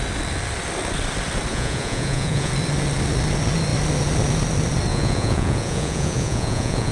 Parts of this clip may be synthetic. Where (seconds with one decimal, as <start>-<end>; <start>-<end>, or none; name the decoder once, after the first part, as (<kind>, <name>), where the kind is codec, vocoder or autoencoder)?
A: 1.5-2.5 (vocoder, Vocos); 4.9-6.9